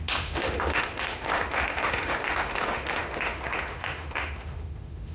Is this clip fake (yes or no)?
yes